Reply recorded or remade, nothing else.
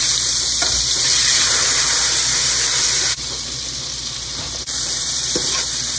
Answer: remade